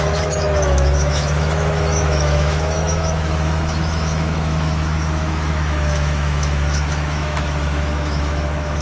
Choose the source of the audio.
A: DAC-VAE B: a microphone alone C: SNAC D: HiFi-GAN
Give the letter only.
A